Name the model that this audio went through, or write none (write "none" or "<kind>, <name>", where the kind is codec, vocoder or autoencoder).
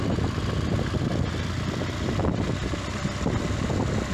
none